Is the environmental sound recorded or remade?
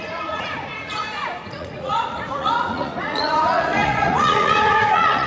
remade